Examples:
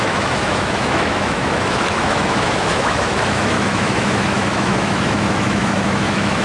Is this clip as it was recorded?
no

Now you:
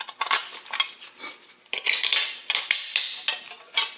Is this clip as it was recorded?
no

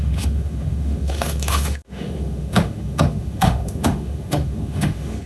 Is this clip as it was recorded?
no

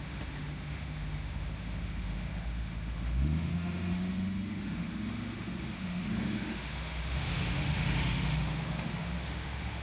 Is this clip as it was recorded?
no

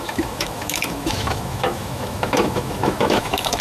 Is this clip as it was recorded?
no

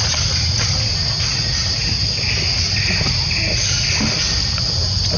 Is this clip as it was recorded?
yes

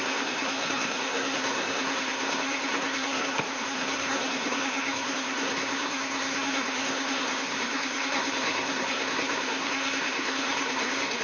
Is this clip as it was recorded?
no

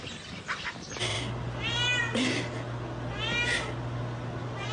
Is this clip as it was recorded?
yes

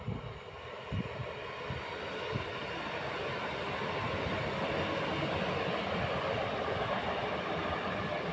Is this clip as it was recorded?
yes